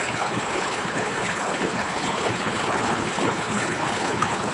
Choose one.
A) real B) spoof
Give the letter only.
B